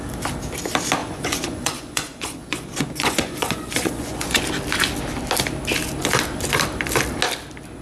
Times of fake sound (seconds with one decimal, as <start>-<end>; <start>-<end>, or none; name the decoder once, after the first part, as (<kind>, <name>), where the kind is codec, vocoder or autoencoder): 1.0-4.4 (vocoder, Vocos)